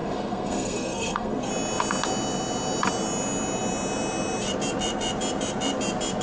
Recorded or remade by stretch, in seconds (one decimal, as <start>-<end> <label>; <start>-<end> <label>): 0.0-1.5 remade; 1.5-6.2 recorded